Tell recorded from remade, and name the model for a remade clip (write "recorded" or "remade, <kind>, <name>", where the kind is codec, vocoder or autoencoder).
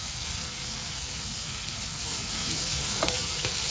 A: remade, codec, SNAC